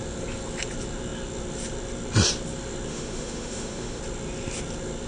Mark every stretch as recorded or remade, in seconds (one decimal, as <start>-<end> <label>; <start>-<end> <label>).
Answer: 0.0-2.9 recorded; 2.9-4.0 remade; 4.0-5.1 recorded